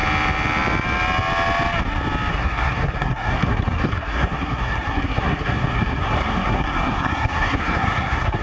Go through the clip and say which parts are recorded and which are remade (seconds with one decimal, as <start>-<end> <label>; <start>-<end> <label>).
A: 0.0-2.3 recorded; 2.3-8.4 remade